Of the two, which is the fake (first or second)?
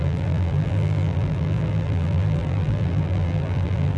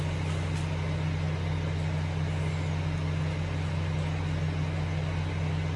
first